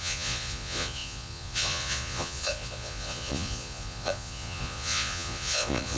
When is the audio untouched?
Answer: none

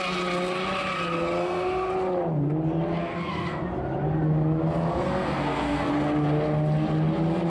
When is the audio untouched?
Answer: 0.0-1.4; 1.9-3.0; 3.6-4.9; 5.9-7.5

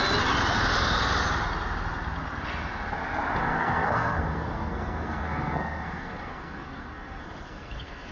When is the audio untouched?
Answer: 0.0-3.4

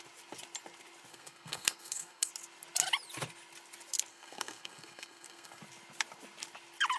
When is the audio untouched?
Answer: 0.0-1.1; 2.3-4.1; 5.6-7.0

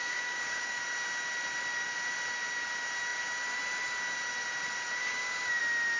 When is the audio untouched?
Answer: 0.8-5.0; 5.6-6.0

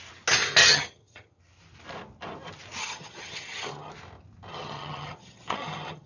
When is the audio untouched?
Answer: 0.0-0.6; 1.4-2.8; 3.9-4.5

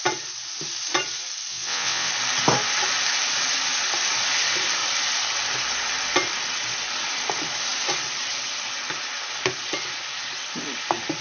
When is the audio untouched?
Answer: 0.0-1.5; 2.1-11.2

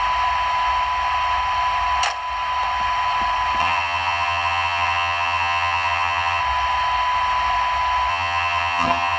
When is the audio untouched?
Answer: 0.0-3.6; 6.4-8.1